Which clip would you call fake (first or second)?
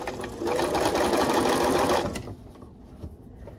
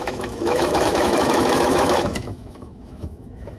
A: second